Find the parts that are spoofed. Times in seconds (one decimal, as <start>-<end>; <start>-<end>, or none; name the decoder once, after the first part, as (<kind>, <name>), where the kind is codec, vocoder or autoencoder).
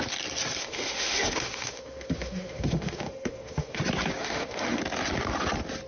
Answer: 0.6-3.8 (autoencoder, DAC-VAE); 4.2-4.8